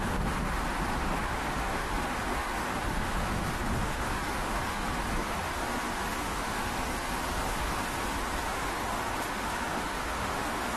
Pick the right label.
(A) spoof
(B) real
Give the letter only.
A